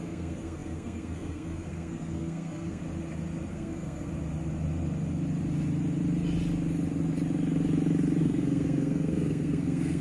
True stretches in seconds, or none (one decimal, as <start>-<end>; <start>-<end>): 2.8-3.5; 4.1-8.2

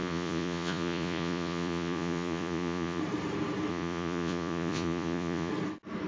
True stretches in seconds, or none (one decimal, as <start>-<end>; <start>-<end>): 3.0-3.7; 5.5-6.1

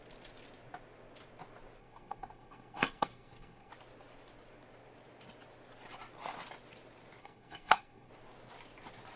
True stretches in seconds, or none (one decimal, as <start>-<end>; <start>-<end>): 0.0-1.8; 3.7-7.2; 8.1-9.2

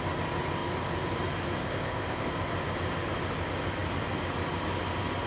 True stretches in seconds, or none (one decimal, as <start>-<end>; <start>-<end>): 0.0-1.6; 2.3-5.3

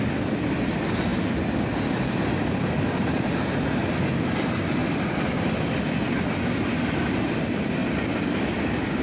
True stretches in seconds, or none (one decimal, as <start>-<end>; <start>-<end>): 0.0-4.8; 6.2-7.8

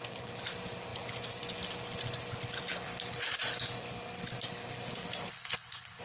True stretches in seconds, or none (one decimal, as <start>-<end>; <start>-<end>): 0.0-5.3

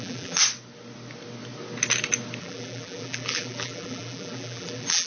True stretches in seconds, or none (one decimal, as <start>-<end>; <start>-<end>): 0.4-2.4

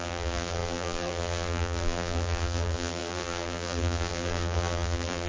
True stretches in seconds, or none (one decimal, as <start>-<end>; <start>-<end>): none